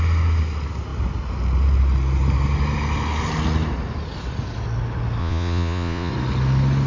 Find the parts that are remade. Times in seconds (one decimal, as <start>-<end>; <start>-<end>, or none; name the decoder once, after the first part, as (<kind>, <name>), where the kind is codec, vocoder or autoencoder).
5.2-6.1 (vocoder, Vocos)